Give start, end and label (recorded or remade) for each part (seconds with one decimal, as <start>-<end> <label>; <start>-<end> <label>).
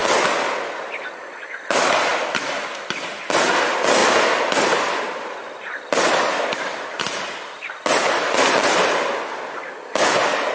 0.0-2.1 recorded; 2.1-2.9 remade; 2.9-4.0 recorded; 4.0-7.0 remade; 7.0-10.5 recorded